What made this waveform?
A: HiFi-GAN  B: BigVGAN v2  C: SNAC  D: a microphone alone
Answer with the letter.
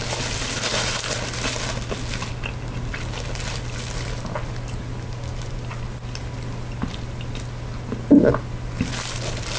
D